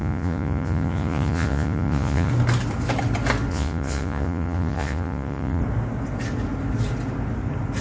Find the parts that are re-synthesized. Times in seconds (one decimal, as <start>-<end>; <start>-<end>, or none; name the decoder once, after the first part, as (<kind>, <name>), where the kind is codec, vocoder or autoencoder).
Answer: 0.0-2.3 (vocoder, Vocos); 3.5-5.6